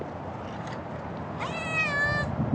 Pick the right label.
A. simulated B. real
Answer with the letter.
B